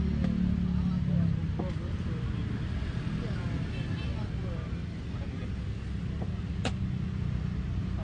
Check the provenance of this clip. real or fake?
real